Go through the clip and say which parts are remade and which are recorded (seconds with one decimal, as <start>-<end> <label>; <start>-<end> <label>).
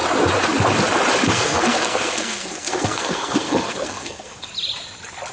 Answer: 0.0-1.3 recorded; 1.3-4.5 remade; 4.5-5.3 recorded